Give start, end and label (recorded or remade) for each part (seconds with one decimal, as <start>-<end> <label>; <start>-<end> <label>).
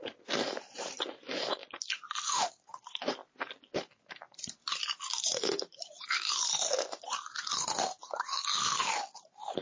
0.0-1.6 remade; 1.6-2.3 recorded; 2.3-3.2 remade; 3.2-4.4 recorded; 4.4-8.4 remade; 8.4-9.2 recorded; 9.2-9.6 remade